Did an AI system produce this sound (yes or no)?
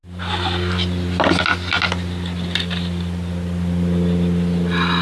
no